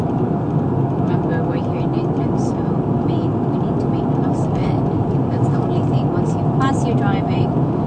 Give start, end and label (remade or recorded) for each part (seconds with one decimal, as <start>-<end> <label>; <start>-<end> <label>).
0.0-7.9 recorded